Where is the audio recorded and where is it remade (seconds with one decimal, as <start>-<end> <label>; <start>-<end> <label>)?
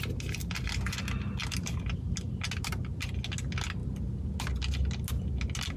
0.0-3.8 recorded; 3.8-4.3 remade; 4.3-5.8 recorded